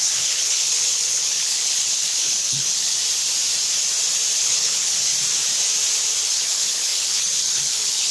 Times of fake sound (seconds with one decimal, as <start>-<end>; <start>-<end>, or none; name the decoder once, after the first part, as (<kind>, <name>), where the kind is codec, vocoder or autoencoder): 0.0-3.0 (codec, HILCodec); 4.4-5.1; 6.3-8.1